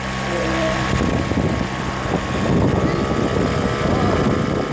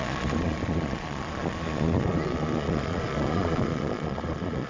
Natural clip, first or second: first